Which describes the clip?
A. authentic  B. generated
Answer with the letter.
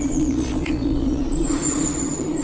B